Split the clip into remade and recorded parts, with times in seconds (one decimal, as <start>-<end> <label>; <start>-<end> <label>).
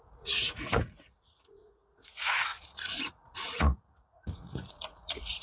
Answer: 0.0-5.4 remade